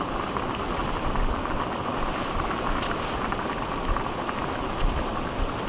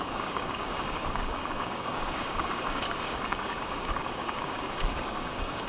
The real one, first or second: first